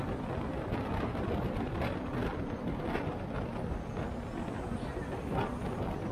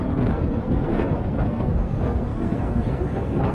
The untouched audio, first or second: first